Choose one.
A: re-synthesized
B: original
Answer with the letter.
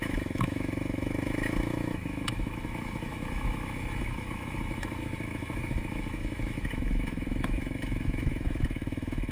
A